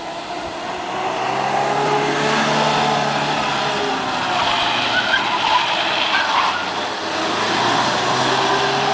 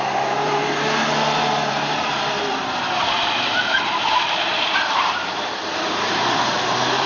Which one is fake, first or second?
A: second